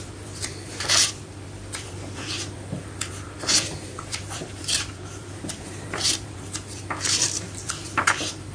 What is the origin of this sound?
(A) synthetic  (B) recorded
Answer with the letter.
A